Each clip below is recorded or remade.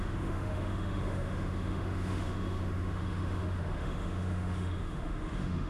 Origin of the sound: remade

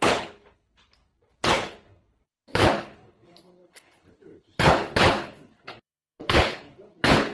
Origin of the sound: remade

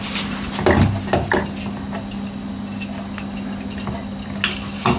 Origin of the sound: recorded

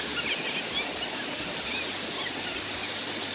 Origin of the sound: recorded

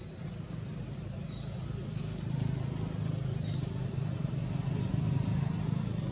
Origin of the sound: recorded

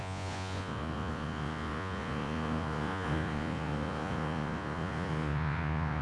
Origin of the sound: remade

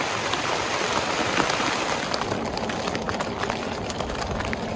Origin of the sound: recorded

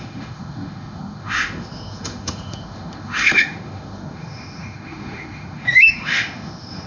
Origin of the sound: remade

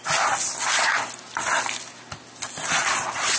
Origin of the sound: recorded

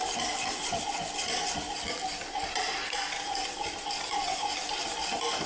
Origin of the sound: recorded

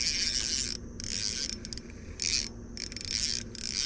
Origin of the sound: recorded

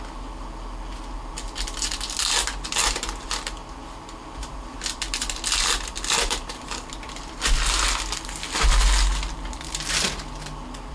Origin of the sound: recorded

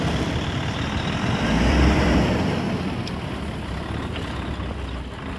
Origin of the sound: remade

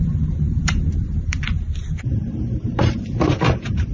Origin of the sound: remade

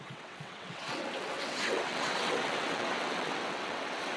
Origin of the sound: remade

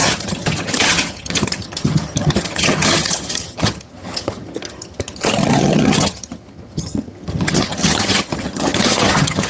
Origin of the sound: remade